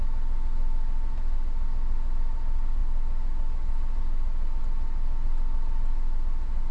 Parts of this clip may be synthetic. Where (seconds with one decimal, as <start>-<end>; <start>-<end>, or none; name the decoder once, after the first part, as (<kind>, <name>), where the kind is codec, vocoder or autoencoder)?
none